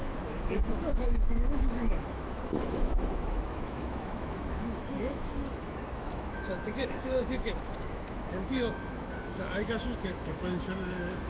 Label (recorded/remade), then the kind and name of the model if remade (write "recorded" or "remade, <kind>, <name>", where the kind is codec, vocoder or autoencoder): remade, autoencoder, DAC-VAE